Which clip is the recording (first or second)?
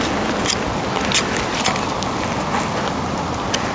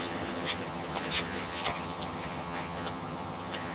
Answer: first